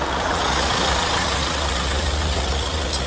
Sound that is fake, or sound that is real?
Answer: fake